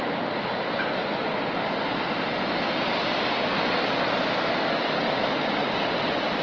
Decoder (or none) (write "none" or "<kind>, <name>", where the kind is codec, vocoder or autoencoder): none